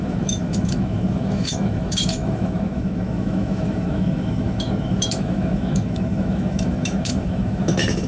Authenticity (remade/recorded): remade